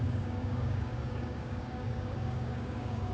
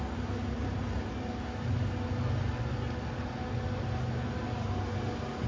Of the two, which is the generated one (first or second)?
first